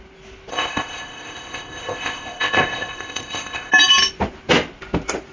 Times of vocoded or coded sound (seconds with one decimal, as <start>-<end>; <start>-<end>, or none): 0.5-3.7